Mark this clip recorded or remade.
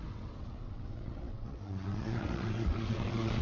remade